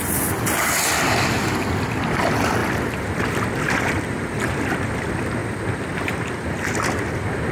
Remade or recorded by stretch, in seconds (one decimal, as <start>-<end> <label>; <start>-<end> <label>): 0.0-7.5 recorded